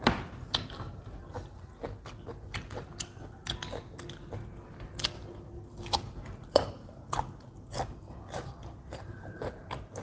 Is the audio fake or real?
real